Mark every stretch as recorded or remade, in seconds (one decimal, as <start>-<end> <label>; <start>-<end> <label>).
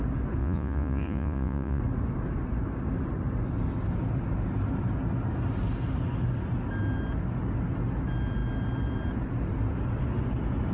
0.0-0.4 recorded; 0.4-1.8 remade; 1.8-10.7 recorded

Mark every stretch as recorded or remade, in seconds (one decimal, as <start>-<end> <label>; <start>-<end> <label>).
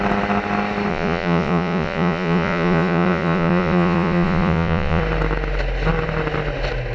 0.0-0.9 recorded; 0.9-5.0 remade; 5.0-6.9 recorded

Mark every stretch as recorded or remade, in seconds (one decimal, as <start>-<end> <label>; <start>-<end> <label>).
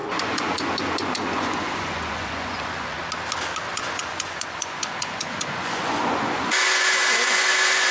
0.0-3.0 remade; 3.0-3.7 recorded; 3.7-7.9 remade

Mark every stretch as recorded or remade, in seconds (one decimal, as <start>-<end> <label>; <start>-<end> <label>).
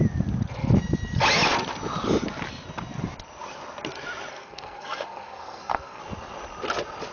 0.0-4.3 recorded; 4.3-6.0 remade; 6.0-7.1 recorded